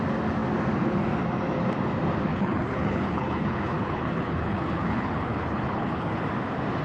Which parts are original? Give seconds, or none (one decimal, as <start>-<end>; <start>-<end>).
0.0-2.3; 6.2-6.8